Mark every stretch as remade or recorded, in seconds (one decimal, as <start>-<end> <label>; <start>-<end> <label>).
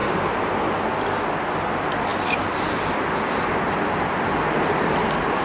0.0-5.4 recorded